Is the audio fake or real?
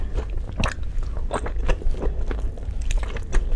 real